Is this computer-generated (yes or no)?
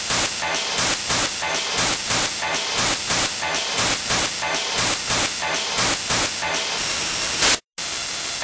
no